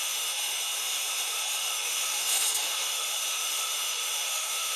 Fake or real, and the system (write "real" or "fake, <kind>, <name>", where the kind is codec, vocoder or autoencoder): fake, autoencoder, DAC-VAE